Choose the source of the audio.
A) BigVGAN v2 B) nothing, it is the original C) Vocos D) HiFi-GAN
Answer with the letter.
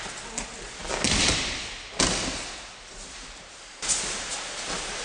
B